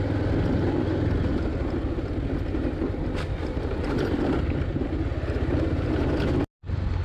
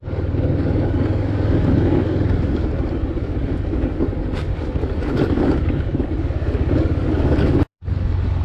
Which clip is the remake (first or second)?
second